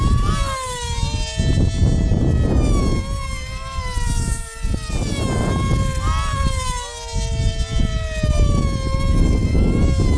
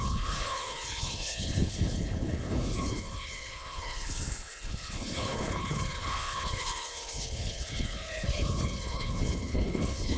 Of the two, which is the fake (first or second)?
second